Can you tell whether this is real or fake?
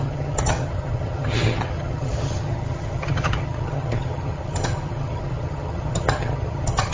fake